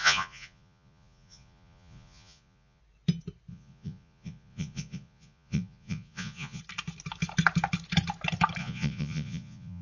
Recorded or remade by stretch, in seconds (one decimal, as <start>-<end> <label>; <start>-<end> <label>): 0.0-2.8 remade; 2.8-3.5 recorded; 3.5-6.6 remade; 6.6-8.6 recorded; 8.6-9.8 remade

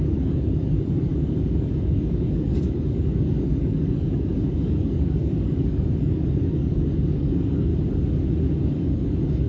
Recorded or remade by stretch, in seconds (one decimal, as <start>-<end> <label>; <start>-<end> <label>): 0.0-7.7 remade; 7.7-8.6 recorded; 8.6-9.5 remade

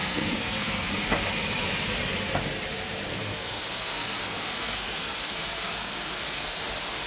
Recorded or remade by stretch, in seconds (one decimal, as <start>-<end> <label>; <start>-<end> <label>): 0.0-0.9 remade; 0.9-3.1 recorded; 3.1-6.6 remade; 6.6-7.1 recorded

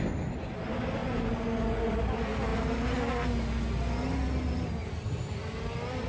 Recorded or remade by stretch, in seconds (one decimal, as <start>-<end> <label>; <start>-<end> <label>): 0.0-6.1 recorded

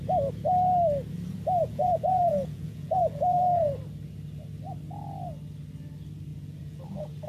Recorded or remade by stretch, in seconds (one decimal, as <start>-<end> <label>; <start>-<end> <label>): 0.0-1.6 recorded; 1.6-3.7 remade; 3.7-6.3 recorded; 6.3-6.8 remade; 6.8-7.3 recorded

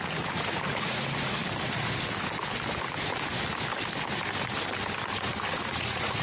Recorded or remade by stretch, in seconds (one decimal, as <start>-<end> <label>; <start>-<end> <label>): 0.0-1.4 remade; 1.4-5.1 recorded; 5.1-6.2 remade

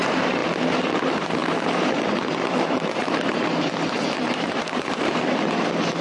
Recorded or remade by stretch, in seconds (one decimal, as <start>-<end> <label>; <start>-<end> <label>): 0.0-0.4 remade; 0.4-0.9 recorded; 0.9-6.0 remade

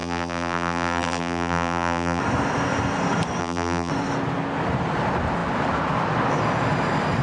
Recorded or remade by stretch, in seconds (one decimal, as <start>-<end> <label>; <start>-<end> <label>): 0.0-2.2 remade; 2.2-3.4 recorded; 3.4-3.9 remade; 3.9-7.2 recorded